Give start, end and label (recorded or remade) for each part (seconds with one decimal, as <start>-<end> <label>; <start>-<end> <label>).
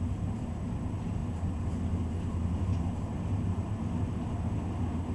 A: 0.0-5.1 recorded